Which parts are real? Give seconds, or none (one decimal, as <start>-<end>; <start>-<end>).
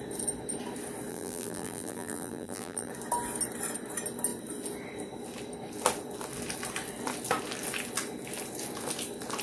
0.0-1.1; 2.9-9.4